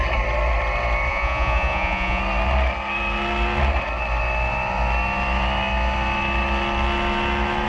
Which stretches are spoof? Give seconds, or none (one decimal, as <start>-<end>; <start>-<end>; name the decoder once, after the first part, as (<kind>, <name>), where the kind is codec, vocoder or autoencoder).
1.1-2.2 (vocoder, Vocos)